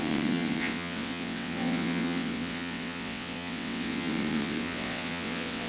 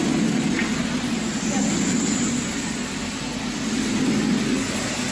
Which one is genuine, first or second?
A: second